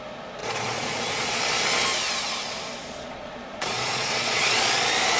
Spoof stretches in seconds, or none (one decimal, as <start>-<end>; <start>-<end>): 0.4-1.4; 2.8-4.7